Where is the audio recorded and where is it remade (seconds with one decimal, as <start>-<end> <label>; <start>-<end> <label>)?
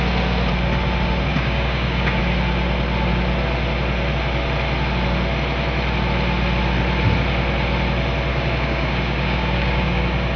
0.0-1.3 recorded; 1.3-2.2 remade; 2.2-8.3 recorded; 8.3-10.0 remade; 10.0-10.4 recorded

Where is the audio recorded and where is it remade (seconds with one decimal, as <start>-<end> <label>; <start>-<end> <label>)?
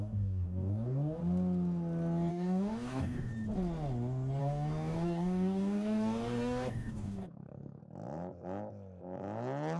0.0-1.2 remade; 1.2-2.3 recorded; 2.3-3.3 remade; 3.3-4.4 recorded; 4.4-7.8 remade; 7.8-9.8 recorded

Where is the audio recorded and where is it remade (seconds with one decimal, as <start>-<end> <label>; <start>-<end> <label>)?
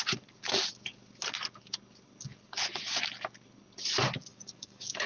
0.0-4.3 recorded; 4.3-5.1 remade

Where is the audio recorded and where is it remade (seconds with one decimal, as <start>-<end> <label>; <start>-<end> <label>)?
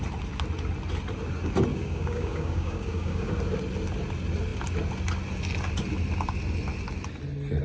0.0-1.7 recorded; 1.7-3.3 remade; 3.3-7.6 recorded